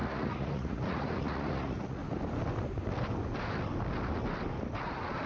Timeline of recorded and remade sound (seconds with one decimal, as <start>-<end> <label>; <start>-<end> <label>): 0.0-2.0 remade; 2.0-5.3 recorded